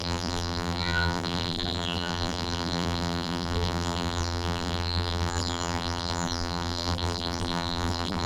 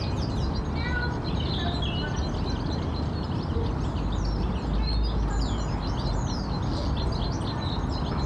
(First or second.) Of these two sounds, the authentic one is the second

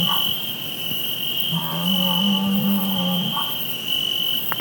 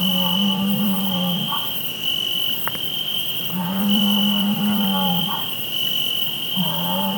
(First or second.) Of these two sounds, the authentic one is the first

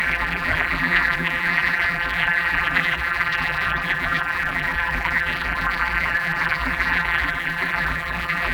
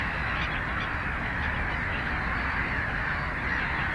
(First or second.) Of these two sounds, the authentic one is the second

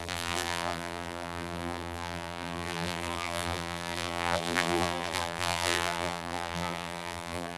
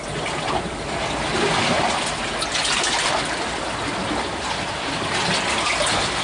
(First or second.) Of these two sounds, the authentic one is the second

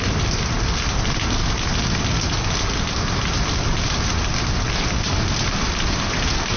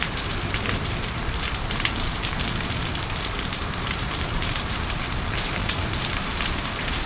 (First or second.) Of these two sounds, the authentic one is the first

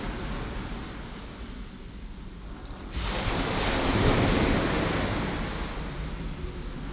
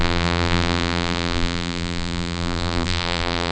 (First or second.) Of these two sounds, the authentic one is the first